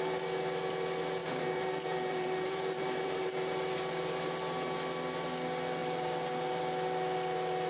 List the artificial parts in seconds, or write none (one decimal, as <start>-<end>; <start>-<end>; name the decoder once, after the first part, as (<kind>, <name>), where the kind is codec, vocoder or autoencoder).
1.2-3.3 (vocoder, BigVGAN v2); 5.8-6.6